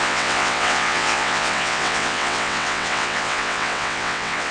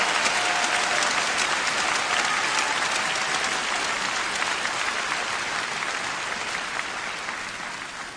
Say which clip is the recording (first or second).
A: second